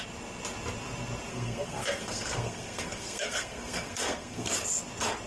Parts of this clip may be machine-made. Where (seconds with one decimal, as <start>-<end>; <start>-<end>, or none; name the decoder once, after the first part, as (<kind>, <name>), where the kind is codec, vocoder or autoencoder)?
1.3-4.5 (codec, SNAC)